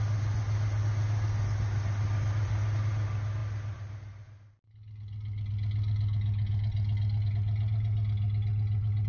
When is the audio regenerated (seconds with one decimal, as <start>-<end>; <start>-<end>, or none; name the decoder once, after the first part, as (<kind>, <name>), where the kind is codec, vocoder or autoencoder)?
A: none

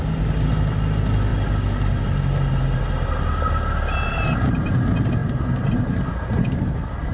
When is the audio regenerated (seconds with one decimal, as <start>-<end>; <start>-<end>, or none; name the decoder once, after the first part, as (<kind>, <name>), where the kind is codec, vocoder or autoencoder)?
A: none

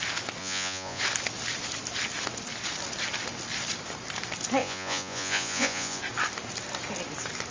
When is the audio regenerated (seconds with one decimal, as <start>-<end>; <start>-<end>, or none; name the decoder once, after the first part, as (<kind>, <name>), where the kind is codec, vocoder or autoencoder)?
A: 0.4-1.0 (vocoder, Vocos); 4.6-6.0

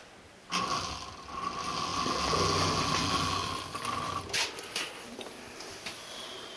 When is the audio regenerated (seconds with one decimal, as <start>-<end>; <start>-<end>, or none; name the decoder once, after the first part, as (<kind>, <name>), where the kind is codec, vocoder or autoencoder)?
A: none

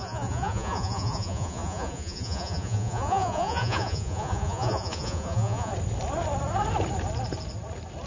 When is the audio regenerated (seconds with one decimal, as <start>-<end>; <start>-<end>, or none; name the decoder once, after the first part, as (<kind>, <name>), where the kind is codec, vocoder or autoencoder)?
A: 0.0-5.7 (vocoder, Vocos)

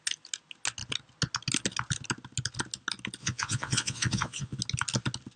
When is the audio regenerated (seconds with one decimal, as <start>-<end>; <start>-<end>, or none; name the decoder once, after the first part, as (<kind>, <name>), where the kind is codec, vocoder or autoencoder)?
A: 3.2-4.6 (vocoder, Vocos)

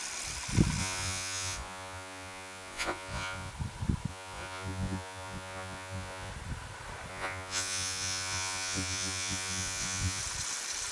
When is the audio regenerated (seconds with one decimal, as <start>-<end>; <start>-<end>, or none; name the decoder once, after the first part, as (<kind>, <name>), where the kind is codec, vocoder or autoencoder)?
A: 0.8-3.5 (vocoder, Vocos); 4.1-6.3; 7.1-10.2